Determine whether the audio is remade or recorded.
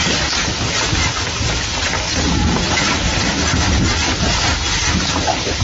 recorded